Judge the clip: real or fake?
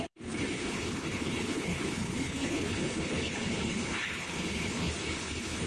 fake